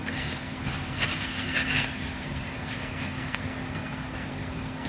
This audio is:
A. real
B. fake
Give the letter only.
B